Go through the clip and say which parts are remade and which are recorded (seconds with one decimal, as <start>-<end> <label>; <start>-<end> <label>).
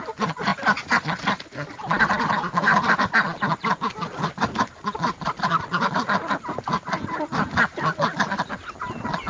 0.0-9.3 recorded